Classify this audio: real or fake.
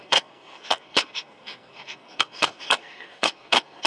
fake